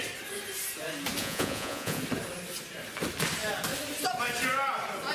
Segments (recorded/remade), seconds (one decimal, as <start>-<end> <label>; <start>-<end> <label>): 0.0-1.2 recorded; 1.2-2.0 remade; 2.0-5.1 recorded